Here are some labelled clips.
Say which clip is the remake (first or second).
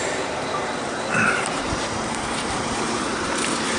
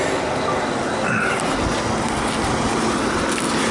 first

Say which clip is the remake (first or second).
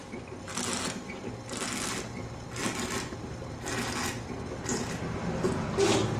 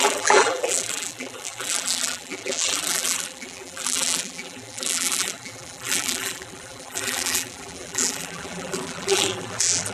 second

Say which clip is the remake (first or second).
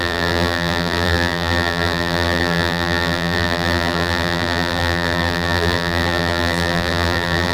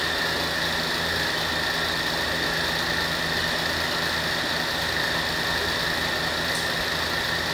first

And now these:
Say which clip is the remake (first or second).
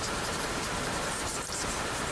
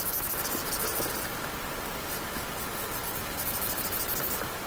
first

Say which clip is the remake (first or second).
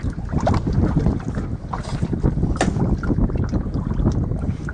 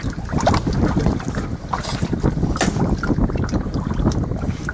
second